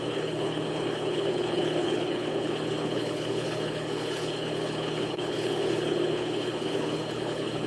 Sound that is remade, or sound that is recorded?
remade